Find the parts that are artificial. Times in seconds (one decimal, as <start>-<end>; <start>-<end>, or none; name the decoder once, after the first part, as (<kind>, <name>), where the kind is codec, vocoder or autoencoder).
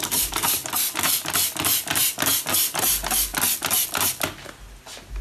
0.0-0.6 (vocoder, BigVGAN v2); 2.5-3.3